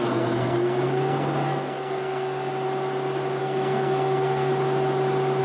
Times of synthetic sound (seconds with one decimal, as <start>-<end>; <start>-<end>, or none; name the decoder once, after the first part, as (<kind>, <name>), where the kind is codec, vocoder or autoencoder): 0.0-2.5 (codec, SNAC); 3.4-4.5